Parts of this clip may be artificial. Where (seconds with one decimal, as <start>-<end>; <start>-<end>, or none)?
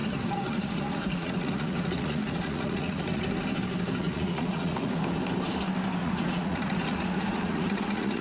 0.0-3.2; 4.0-5.0; 6.0-8.2